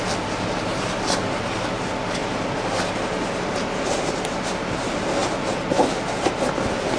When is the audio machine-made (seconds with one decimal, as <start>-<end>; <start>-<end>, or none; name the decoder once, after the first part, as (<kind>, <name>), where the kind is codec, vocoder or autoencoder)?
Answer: none